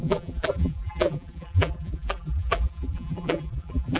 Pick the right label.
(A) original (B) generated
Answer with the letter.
B